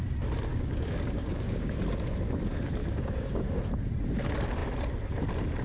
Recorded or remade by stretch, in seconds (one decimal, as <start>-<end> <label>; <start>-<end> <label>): 0.0-0.5 recorded; 0.5-1.8 remade; 1.8-2.8 recorded; 2.8-3.6 remade; 3.6-5.6 recorded

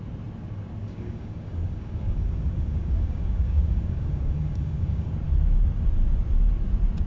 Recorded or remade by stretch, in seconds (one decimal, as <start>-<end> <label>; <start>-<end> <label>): 0.0-0.8 recorded; 0.8-5.1 remade; 5.1-7.1 recorded